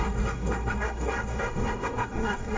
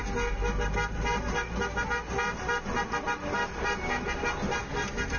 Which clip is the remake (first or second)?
first